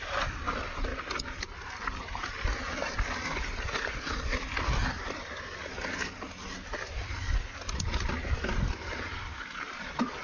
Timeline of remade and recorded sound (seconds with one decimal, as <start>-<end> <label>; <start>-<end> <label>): 0.0-0.9 remade; 0.9-1.7 recorded; 1.7-4.8 remade; 4.8-6.9 recorded; 6.9-10.2 remade